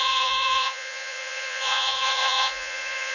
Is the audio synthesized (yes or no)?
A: yes